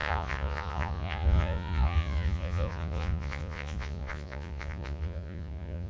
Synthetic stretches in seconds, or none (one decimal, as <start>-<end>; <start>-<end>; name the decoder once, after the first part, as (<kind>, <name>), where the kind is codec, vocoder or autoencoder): 0.0-5.9 (vocoder, Vocos)